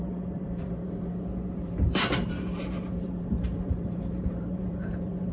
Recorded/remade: remade